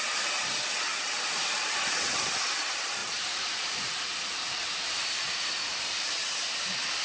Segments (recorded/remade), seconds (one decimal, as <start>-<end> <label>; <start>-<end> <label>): 0.0-0.9 recorded; 0.9-2.3 remade; 2.3-3.0 recorded; 3.0-6.1 remade; 6.1-7.0 recorded